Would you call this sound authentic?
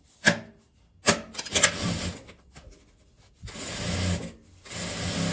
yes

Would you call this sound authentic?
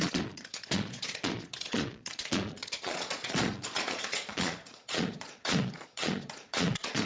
no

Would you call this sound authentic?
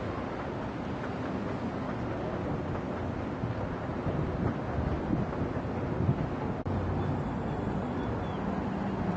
yes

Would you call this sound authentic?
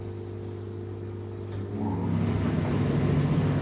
yes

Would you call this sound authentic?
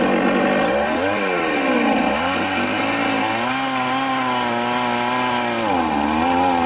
yes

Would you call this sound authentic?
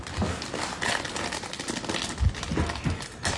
yes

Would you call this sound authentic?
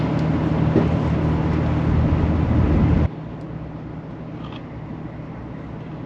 yes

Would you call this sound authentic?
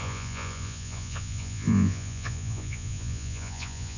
no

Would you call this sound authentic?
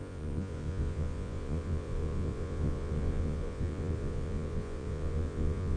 no